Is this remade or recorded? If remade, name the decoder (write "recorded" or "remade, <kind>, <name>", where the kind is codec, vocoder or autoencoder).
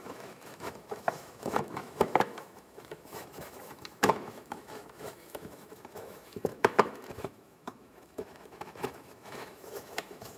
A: remade, autoencoder, DAC-VAE